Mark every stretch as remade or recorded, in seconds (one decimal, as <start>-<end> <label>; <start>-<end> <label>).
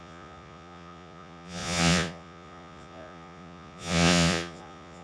0.0-5.0 remade